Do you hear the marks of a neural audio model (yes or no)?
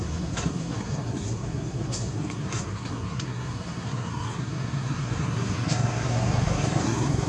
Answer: yes